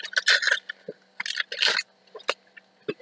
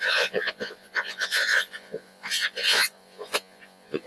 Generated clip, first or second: second